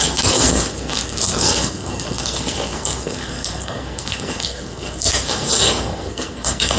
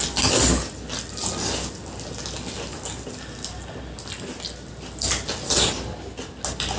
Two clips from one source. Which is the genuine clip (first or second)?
second